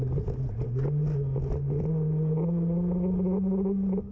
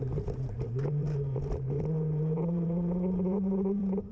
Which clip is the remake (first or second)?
second